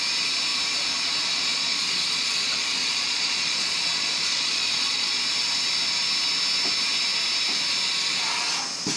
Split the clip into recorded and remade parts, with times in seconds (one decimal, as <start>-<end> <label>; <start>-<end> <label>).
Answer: 0.0-1.5 recorded; 1.5-5.2 remade; 5.2-9.0 recorded